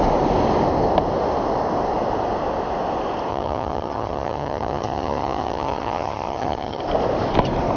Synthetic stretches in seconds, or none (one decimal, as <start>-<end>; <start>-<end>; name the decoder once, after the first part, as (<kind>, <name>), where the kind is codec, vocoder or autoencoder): 3.3-6.8 (vocoder, HiFi-GAN)